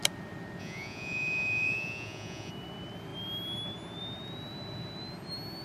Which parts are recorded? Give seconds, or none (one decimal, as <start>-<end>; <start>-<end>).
0.0-0.6; 2.5-5.6